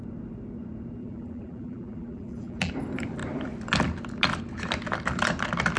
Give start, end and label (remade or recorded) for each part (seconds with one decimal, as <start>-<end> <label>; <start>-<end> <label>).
0.0-1.0 recorded; 1.0-2.7 remade; 2.7-5.8 recorded